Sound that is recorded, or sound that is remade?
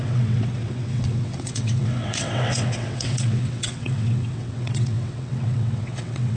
remade